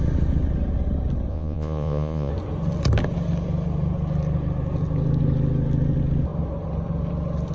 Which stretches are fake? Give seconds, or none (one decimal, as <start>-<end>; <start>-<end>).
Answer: 1.3-2.3